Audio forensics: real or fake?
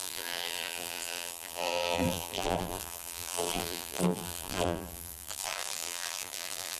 fake